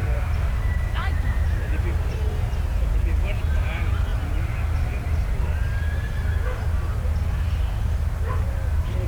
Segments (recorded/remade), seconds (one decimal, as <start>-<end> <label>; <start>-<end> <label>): 0.0-2.7 remade; 2.7-3.4 recorded; 3.4-4.1 remade; 4.1-8.3 recorded; 8.3-9.1 remade